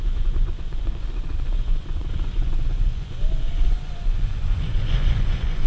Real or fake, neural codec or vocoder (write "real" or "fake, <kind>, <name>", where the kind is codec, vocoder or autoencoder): fake, vocoder, Vocos